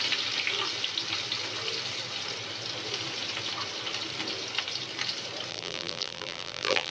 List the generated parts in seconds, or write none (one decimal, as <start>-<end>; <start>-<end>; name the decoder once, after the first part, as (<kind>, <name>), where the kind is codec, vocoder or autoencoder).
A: 5.5-6.9 (vocoder, BigVGAN v2)

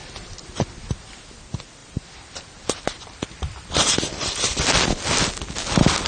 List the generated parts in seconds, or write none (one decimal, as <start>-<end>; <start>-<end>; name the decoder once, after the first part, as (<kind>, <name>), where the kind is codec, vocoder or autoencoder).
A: 0.0-1.2 (vocoder, BigVGAN v2); 1.8-4.4

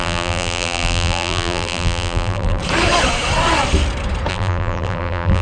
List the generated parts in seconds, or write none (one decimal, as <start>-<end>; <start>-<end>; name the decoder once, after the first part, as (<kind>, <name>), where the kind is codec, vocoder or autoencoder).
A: 0.0-2.6 (vocoder, BigVGAN v2); 4.3-5.4

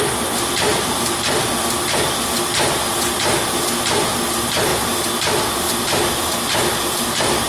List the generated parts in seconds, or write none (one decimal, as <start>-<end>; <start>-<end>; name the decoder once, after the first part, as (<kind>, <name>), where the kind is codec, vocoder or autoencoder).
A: 0.7-1.5 (vocoder, BigVGAN v2)

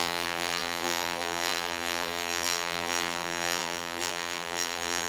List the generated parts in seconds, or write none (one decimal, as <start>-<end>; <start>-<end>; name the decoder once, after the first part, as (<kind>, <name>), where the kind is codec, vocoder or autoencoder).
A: 0.0-5.1 (vocoder, BigVGAN v2)